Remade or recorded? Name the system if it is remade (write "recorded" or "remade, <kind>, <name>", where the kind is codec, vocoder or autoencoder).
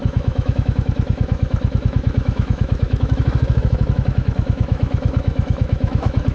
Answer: remade, autoencoder, DAC-VAE